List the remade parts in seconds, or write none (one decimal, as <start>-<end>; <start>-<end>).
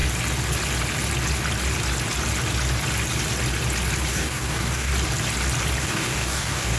4.1-4.9; 5.8-6.8